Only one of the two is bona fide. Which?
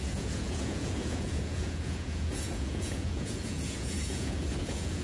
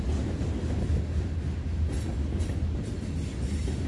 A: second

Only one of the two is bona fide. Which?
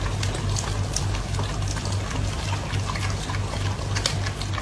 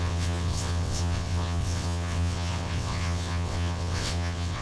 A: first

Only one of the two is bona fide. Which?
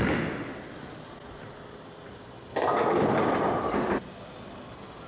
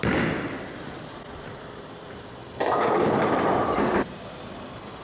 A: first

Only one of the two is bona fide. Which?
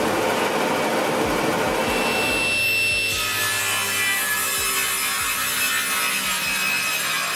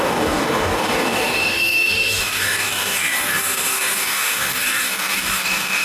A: first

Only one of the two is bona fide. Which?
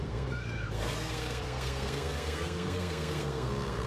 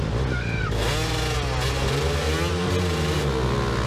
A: second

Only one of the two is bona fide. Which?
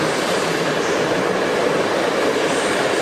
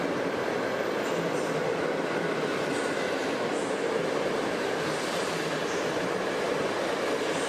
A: second